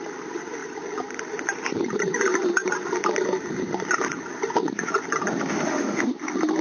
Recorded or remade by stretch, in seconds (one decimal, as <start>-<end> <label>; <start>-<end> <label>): 0.0-5.5 recorded; 5.5-6.1 remade; 6.1-6.6 recorded